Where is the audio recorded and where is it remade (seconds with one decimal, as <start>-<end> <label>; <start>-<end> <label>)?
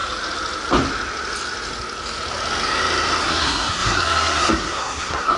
0.0-3.2 recorded; 3.2-5.4 remade